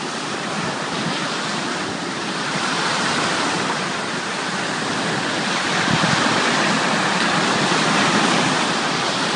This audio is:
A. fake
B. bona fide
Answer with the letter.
A